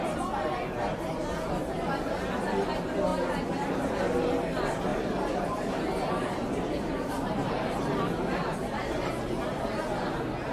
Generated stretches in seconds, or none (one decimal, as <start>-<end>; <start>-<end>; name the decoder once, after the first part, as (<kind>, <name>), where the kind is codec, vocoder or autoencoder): 3.1-3.9 (vocoder, BigVGAN v2); 4.9-8.2